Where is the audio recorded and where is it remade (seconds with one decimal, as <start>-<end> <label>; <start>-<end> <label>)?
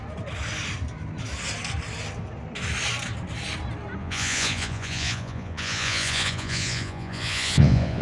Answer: 0.0-4.0 recorded; 4.0-8.0 remade